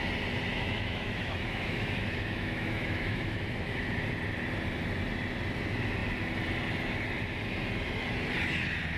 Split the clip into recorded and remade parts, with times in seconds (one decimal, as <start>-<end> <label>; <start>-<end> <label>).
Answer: 0.0-0.5 recorded; 0.5-4.0 remade; 4.0-9.0 recorded